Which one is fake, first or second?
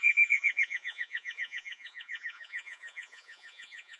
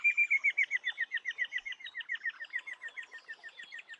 first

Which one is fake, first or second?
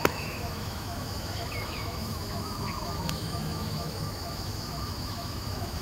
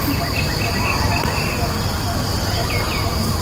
first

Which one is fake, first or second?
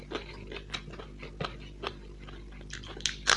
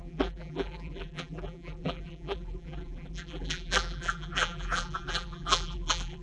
second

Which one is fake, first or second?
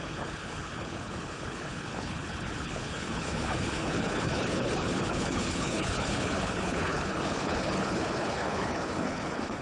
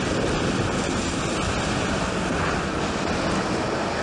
first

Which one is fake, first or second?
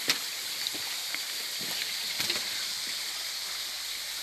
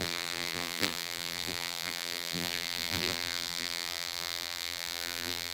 second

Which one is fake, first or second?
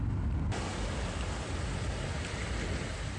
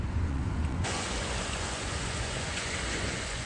second